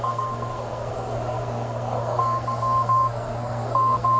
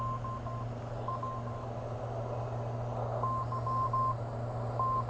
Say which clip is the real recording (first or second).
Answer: second